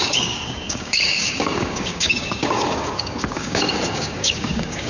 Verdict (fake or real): fake